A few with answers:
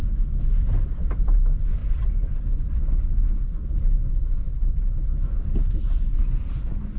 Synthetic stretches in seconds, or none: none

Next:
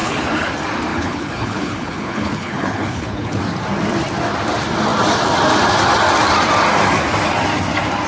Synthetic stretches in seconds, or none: 0.0-0.5 (codec, HILCodec); 0.9-3.4

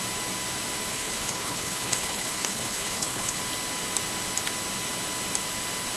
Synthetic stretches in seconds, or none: 0.9-3.4 (codec, HILCodec)

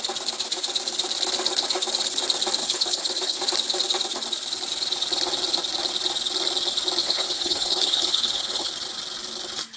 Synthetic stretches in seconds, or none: 2.6-3.4 (codec, HILCodec); 7.0-8.7

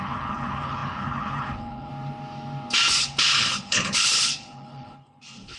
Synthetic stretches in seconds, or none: 0.0-1.9 (codec, HILCodec); 3.0-5.6

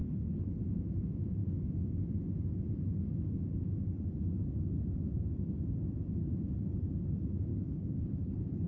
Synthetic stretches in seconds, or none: 0.0-0.6 (codec, HILCodec); 7.5-8.7

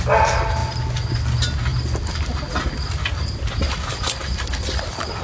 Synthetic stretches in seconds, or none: none